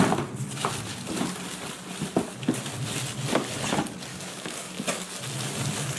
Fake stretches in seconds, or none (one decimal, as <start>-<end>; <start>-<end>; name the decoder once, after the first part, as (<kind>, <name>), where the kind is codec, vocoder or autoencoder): 4.1-5.1 (codec, DAC)